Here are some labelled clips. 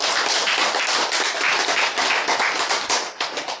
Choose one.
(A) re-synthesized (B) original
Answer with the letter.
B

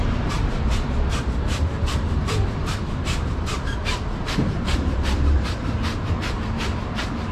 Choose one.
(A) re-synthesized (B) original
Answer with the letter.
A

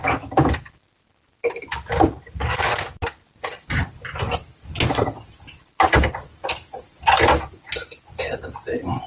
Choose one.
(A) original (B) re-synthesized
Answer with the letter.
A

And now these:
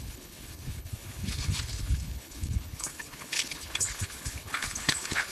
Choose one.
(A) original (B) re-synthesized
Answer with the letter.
B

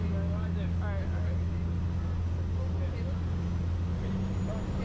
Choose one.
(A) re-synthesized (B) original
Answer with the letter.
B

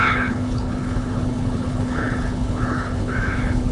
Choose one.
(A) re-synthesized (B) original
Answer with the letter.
A